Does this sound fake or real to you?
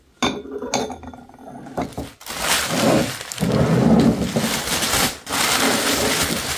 real